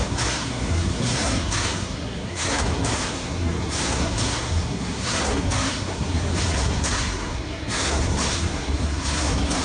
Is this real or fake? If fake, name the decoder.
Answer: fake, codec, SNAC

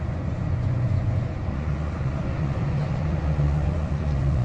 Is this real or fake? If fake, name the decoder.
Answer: fake, vocoder, Vocos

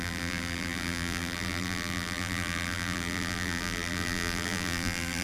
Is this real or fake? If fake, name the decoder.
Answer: fake, vocoder, BigVGAN v2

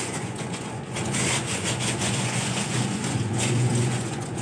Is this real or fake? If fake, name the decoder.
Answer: fake, vocoder, Vocos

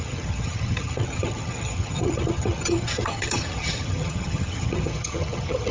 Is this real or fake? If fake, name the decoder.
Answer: fake, vocoder, HiFi-GAN